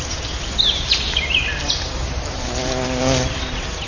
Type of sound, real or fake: real